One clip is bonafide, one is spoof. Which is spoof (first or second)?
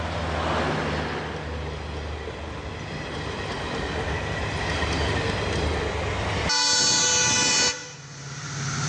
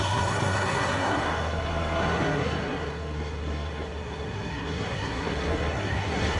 second